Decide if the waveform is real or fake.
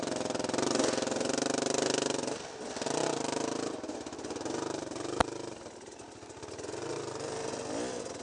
real